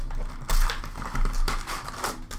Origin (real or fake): real